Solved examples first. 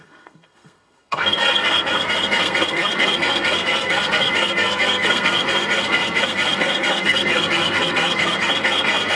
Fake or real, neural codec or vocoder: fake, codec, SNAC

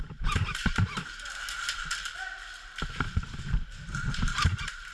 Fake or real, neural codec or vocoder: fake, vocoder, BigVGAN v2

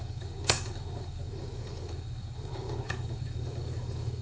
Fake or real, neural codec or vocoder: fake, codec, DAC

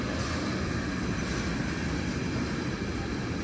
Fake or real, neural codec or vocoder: real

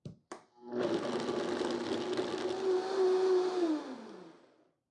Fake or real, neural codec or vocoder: real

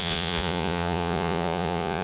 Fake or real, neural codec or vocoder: fake, vocoder, Vocos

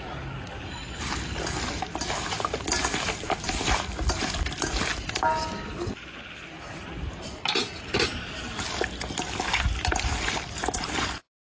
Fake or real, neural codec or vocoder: real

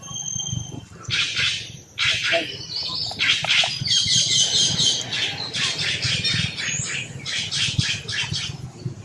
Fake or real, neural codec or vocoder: real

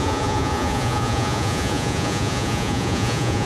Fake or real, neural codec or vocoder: fake, vocoder, Vocos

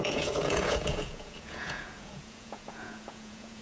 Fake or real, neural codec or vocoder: fake, vocoder, Vocos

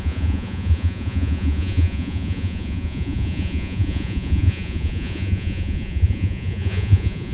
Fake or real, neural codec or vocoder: fake, vocoder, Vocos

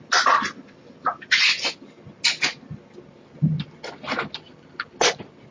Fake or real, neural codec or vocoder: real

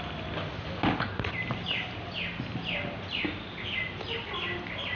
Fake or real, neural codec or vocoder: real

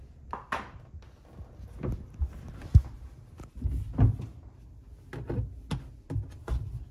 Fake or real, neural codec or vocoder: real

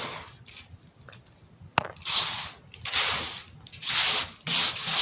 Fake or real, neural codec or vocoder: real